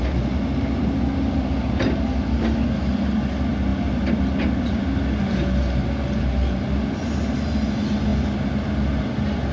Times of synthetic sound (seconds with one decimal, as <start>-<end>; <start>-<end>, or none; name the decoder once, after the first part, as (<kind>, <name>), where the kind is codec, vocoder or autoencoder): none